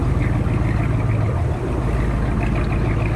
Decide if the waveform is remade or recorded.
recorded